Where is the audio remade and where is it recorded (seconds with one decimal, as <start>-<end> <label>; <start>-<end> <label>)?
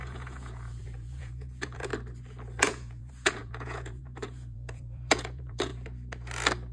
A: 0.0-1.9 remade; 1.9-2.6 recorded; 2.6-5.7 remade; 5.7-6.7 recorded